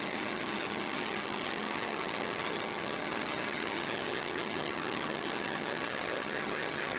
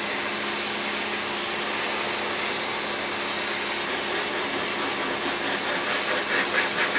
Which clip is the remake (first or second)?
first